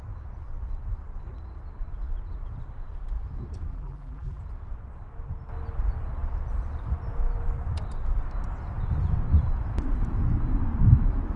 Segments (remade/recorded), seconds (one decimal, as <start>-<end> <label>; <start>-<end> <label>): 0.0-3.7 recorded; 3.7-4.4 remade; 4.4-11.4 recorded

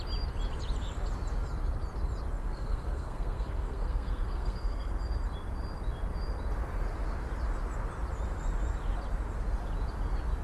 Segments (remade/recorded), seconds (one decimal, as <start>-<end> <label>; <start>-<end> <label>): 0.0-2.4 recorded; 2.4-4.9 remade; 4.9-10.4 recorded

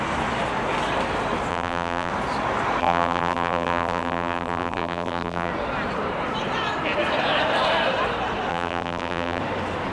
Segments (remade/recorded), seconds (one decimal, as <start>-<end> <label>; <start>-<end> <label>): 0.0-1.5 recorded; 1.5-2.1 remade; 2.1-2.8 recorded; 2.8-5.5 remade; 5.5-8.5 recorded; 8.5-9.4 remade; 9.4-9.9 recorded